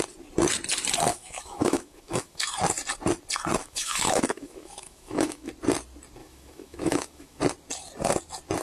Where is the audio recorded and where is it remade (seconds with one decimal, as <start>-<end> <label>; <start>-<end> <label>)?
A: 0.0-1.1 recorded; 1.1-2.5 remade; 2.5-3.6 recorded; 3.6-5.5 remade; 5.5-6.2 recorded; 6.2-7.4 remade; 7.4-8.6 recorded